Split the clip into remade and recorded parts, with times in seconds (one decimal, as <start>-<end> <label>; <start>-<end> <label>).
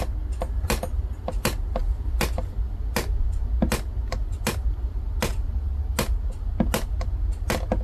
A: 0.0-7.8 recorded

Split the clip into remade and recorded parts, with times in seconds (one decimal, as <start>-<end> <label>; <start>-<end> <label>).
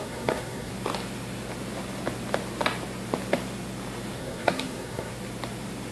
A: 0.0-0.7 remade; 0.7-4.2 recorded; 4.2-5.1 remade; 5.1-5.9 recorded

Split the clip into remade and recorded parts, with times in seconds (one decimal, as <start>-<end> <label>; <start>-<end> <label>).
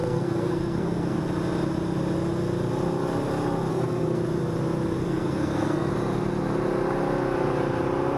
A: 0.0-1.2 remade; 1.2-3.7 recorded; 3.7-4.2 remade; 4.2-5.0 recorded; 5.0-5.9 remade; 5.9-8.2 recorded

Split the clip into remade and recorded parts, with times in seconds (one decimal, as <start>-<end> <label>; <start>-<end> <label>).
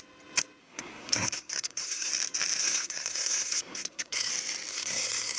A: 0.0-0.6 recorded; 0.6-2.1 remade; 2.1-2.6 recorded; 2.6-4.3 remade; 4.3-4.7 recorded; 4.7-5.4 remade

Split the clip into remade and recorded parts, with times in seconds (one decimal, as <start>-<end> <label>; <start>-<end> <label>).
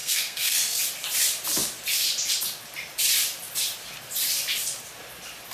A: 0.0-0.8 remade; 0.8-5.5 recorded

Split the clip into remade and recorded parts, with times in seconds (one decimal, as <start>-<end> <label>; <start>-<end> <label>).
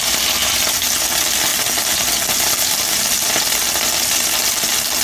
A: 0.0-5.0 recorded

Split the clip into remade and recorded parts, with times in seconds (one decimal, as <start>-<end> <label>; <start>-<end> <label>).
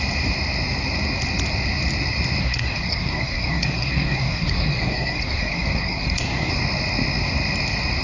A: 0.0-2.4 recorded; 2.4-6.5 remade; 6.5-8.0 recorded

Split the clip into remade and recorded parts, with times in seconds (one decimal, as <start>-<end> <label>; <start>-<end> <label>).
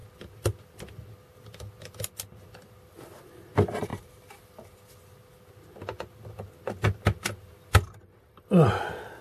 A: 0.0-9.2 recorded